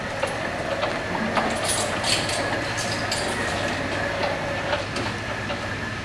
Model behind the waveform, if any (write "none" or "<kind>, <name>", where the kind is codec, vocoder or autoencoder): none